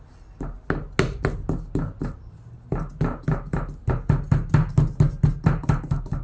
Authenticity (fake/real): real